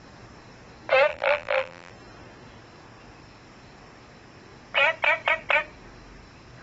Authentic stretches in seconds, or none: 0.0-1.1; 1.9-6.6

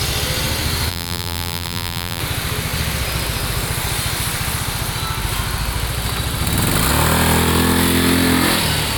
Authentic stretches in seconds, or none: 0.0-0.9; 2.2-9.0

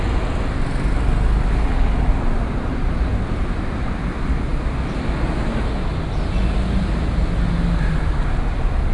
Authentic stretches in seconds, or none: 0.0-8.9

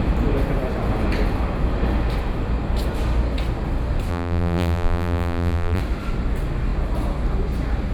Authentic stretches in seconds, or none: 0.0-4.1; 5.8-7.9

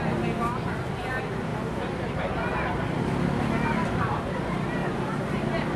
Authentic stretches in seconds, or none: 0.0-5.8

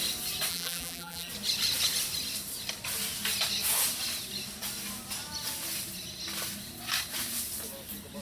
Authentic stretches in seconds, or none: 0.0-0.5; 1.3-8.2

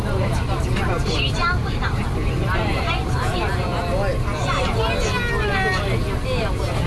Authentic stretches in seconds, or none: 0.0-1.4; 3.2-6.9

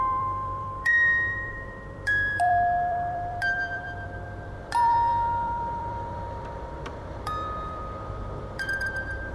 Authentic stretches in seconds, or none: none